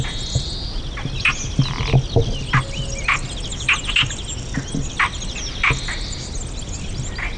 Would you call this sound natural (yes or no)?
yes